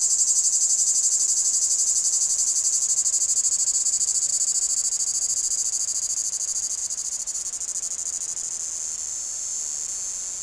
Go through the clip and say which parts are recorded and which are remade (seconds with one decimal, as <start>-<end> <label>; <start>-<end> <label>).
0.0-3.8 recorded; 3.8-4.3 remade; 4.3-6.8 recorded; 6.8-7.4 remade; 7.4-9.1 recorded; 9.1-9.6 remade; 9.6-10.4 recorded